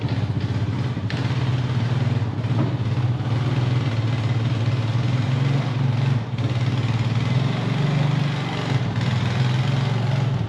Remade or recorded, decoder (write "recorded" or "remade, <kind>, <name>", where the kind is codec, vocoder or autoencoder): recorded